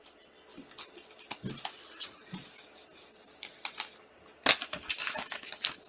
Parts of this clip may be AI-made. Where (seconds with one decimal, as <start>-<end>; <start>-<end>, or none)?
none